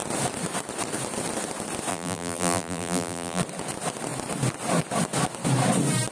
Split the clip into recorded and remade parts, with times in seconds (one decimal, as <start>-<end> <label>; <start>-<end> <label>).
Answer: 0.0-1.9 recorded; 1.9-3.4 remade; 3.4-6.1 recorded